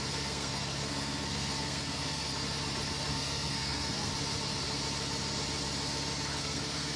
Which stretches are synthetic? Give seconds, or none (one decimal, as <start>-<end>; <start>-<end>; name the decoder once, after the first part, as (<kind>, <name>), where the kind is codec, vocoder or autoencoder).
0.0-2.3 (codec, SNAC); 3.1-4.1; 6.4-7.0